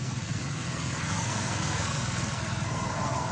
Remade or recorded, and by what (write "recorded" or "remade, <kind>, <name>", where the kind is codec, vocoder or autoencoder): remade, codec, SNAC